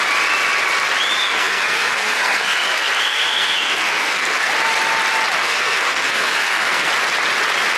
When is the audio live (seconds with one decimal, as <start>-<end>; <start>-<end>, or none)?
0.0-1.2; 4.5-5.4; 6.9-7.8